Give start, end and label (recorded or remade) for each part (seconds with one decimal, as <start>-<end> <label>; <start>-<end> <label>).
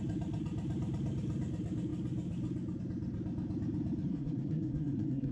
0.0-4.1 recorded; 4.1-5.3 remade